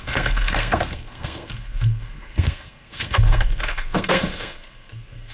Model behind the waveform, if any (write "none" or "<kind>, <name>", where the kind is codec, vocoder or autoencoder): codec, SNAC